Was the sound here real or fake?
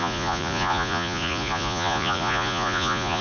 fake